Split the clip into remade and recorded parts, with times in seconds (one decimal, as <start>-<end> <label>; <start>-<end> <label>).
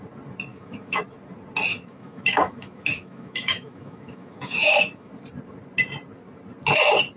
0.0-0.5 recorded; 0.5-1.0 remade; 1.0-1.7 recorded; 1.7-5.1 remade; 5.1-7.2 recorded